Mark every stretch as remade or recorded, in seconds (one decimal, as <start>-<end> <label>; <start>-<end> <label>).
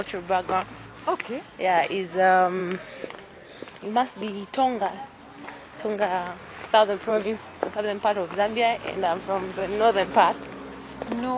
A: 0.0-7.1 recorded; 7.1-7.6 remade; 7.6-11.4 recorded